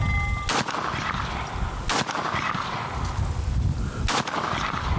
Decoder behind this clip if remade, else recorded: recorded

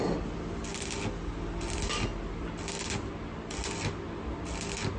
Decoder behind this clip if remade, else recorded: recorded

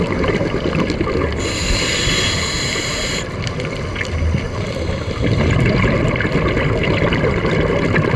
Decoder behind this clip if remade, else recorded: recorded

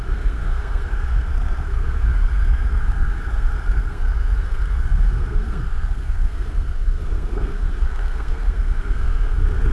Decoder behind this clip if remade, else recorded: remade, codec, SNAC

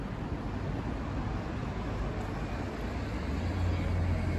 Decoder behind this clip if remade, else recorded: recorded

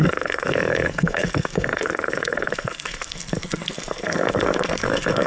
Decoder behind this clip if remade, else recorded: remade, codec, SNAC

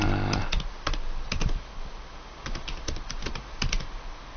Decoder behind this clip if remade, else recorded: recorded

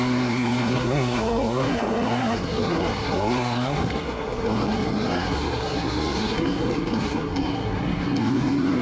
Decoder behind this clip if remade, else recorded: remade, codec, SNAC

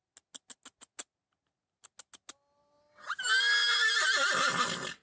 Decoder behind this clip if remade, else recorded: recorded